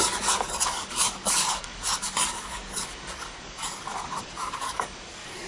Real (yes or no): no